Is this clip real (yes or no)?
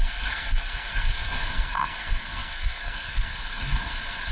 no